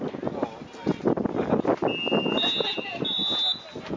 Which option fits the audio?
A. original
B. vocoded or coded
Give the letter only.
A